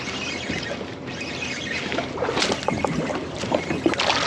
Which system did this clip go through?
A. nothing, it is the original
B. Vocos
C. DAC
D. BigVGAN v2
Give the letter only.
A